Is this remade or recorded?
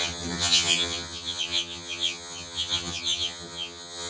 remade